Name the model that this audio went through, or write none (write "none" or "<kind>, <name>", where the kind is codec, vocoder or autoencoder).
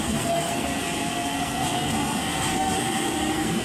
codec, SNAC